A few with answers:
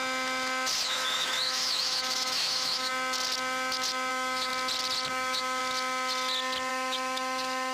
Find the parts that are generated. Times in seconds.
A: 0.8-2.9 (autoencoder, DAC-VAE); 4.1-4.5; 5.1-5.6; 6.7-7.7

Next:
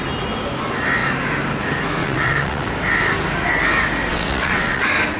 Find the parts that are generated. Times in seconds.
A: 2.0-2.7 (vocoder, WaveNeXt); 4.1-4.8